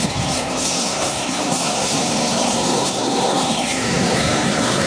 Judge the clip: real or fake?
fake